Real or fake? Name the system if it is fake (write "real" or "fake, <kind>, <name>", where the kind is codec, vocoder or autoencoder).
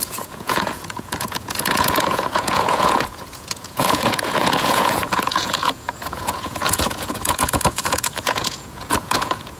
fake, vocoder, Vocos